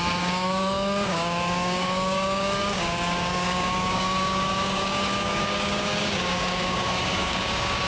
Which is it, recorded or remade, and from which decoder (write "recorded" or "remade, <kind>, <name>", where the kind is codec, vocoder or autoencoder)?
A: remade, codec, DAC